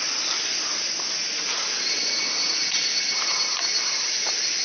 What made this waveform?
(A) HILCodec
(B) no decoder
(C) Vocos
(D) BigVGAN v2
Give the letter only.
B